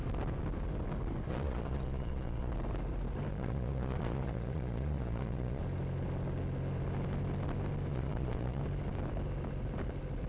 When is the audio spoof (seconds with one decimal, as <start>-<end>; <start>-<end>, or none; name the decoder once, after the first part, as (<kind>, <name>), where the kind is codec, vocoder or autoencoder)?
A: 1.3-2.5 (vocoder, Vocos); 3.3-5.6; 7.9-8.6